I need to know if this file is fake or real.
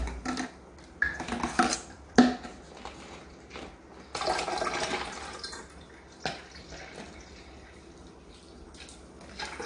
real